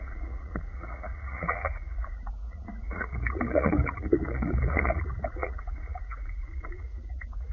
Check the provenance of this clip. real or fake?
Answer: fake